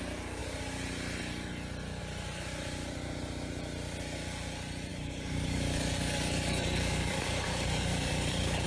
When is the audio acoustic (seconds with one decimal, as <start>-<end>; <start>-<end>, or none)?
0.0-4.9